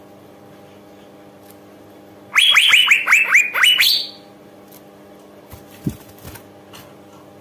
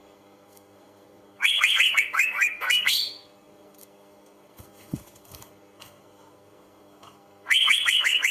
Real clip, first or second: first